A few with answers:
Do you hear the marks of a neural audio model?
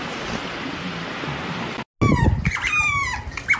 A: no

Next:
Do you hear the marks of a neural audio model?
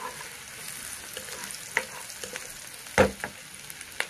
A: no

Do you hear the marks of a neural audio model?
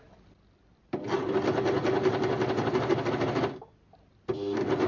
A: no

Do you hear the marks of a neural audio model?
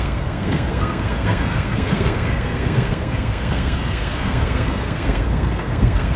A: yes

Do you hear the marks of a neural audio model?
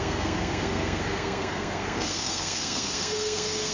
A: yes